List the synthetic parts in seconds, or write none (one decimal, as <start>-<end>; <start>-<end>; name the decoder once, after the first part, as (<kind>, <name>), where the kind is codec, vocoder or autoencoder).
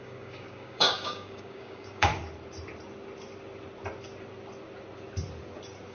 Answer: 0.0-2.1 (codec, DAC)